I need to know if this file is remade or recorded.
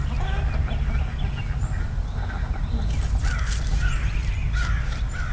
recorded